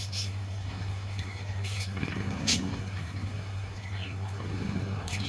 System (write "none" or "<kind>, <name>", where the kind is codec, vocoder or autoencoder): codec, SNAC